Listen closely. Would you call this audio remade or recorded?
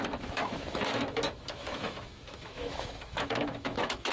remade